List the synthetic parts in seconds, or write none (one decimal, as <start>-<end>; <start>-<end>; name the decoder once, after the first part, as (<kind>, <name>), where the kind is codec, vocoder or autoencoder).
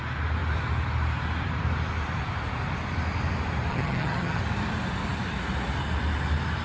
3.7-4.4 (vocoder, HiFi-GAN)